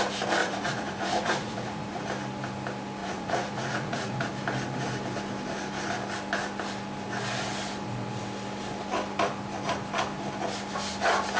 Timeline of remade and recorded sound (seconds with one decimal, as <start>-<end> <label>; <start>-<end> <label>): 0.0-0.4 recorded; 0.4-2.0 remade; 2.0-3.0 recorded; 3.0-4.3 remade; 4.3-11.4 recorded